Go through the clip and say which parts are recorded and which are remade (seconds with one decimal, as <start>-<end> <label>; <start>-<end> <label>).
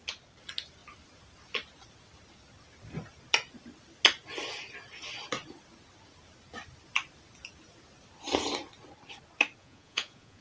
0.0-9.6 recorded; 9.6-10.4 remade